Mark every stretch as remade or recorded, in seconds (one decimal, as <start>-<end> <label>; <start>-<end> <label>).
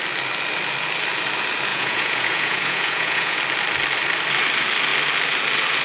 0.0-1.7 recorded; 1.7-3.4 remade; 3.4-5.8 recorded